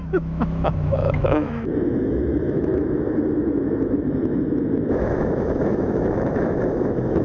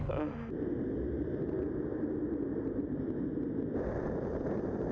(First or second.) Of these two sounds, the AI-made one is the first